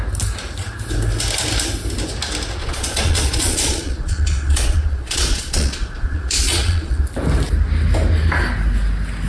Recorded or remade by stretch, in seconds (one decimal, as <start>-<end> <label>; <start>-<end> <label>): 0.0-2.6 recorded; 2.6-7.0 remade; 7.0-9.3 recorded